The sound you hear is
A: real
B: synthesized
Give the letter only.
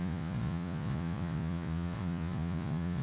B